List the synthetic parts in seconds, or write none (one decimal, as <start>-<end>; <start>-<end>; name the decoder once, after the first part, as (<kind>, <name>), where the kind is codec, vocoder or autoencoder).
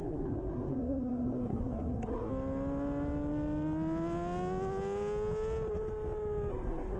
0.0-2.3 (codec, SNAC); 6.5-7.0